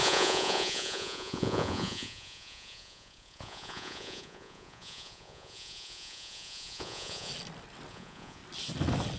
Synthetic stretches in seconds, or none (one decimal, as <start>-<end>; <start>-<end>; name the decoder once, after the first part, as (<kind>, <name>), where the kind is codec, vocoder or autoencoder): 0.0-7.3 (vocoder, Vocos); 7.9-8.4

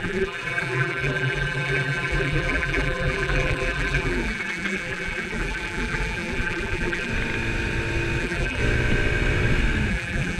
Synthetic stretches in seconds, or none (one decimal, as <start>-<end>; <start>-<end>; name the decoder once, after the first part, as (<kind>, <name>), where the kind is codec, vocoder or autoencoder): 0.0-7.1 (vocoder, BigVGAN v2); 8.2-8.6; 9.9-10.4

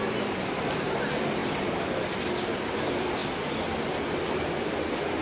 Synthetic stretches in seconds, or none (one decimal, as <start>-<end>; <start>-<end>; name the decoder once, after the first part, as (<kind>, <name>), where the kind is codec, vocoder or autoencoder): none

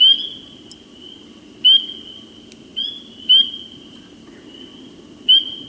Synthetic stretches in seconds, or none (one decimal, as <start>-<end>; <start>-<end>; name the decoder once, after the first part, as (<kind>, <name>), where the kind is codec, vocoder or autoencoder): none

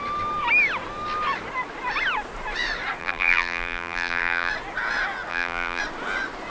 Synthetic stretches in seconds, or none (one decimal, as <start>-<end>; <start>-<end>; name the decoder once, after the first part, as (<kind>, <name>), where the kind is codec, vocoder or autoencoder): 3.0-4.5 (vocoder, BigVGAN v2); 5.3-5.8

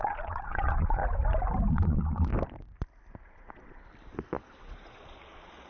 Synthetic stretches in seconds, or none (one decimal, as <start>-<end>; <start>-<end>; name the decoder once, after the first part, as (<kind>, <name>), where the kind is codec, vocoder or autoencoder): 0.0-1.0 (vocoder, Vocos); 1.7-2.3; 3.2-3.9; 4.4-5.7